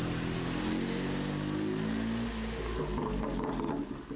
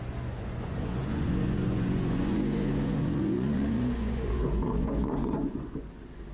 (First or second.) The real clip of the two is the first